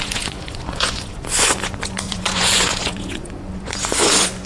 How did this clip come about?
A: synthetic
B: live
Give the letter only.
A